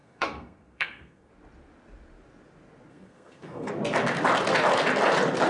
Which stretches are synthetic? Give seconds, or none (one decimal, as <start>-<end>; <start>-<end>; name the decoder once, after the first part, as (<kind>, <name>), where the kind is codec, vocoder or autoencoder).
0.0-1.3 (codec, SNAC); 2.9-3.7

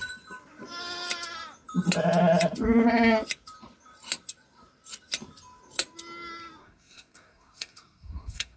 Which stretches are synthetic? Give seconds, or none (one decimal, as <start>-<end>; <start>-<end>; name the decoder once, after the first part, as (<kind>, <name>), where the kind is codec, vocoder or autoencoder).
6.6-8.6 (codec, SNAC)